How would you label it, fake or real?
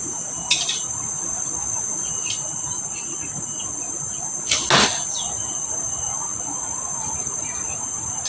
real